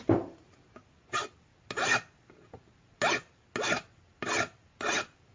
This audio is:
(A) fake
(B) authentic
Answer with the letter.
B